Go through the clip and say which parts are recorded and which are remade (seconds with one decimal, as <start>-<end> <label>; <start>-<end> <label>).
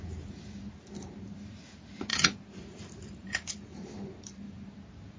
0.0-2.1 recorded; 2.1-4.7 remade; 4.7-5.2 recorded